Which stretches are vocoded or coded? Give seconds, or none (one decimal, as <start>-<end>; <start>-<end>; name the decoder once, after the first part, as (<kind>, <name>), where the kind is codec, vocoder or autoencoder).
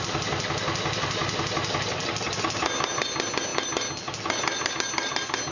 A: none